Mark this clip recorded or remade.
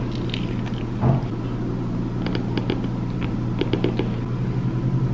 recorded